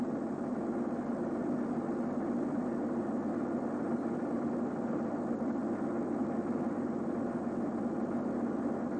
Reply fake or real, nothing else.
real